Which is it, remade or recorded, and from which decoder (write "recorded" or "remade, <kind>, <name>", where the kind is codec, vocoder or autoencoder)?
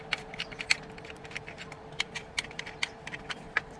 remade, vocoder, BigVGAN v2